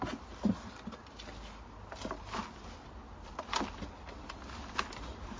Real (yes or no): yes